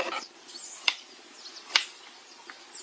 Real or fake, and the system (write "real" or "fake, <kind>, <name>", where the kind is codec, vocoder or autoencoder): real